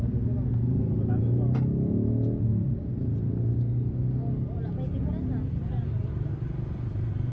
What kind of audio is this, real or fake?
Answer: real